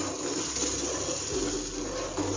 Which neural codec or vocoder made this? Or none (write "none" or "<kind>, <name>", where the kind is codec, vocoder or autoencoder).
none